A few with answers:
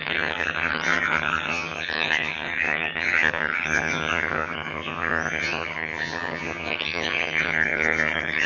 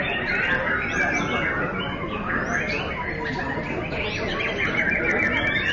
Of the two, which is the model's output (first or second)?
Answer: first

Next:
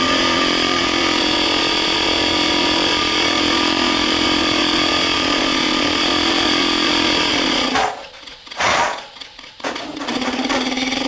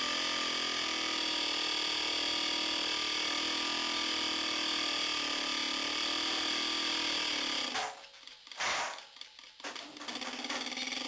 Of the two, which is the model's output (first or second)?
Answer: first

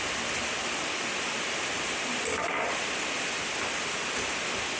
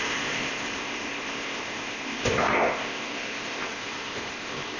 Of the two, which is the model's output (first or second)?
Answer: second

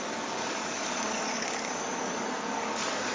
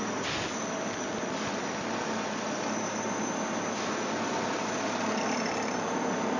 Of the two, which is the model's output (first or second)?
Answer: first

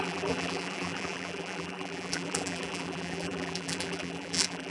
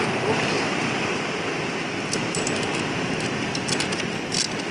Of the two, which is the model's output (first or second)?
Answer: first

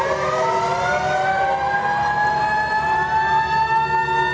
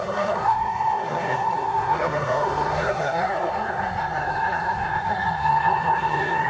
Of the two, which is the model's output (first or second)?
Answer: second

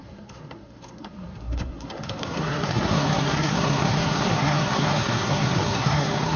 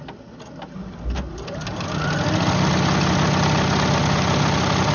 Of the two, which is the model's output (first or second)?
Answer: first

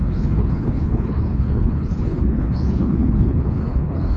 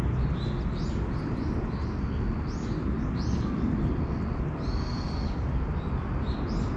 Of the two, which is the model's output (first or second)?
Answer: first